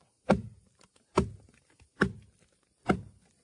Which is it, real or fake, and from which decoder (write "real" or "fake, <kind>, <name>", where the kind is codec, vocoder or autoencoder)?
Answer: real